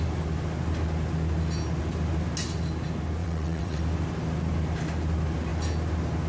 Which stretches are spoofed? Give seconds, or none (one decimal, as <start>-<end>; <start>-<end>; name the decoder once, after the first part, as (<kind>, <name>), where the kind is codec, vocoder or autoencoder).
3.2-3.8 (vocoder, WaveNeXt)